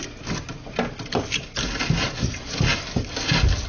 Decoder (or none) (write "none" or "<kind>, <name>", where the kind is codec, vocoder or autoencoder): none